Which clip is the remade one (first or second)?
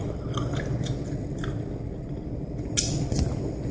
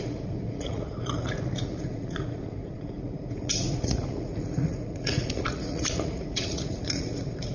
second